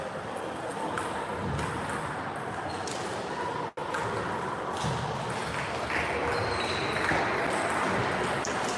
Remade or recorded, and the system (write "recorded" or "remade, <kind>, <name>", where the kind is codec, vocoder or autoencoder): recorded